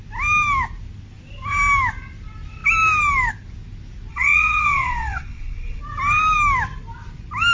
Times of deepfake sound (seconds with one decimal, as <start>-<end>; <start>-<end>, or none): 4.1-5.8